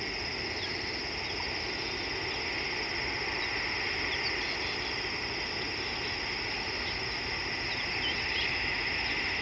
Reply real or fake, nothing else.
real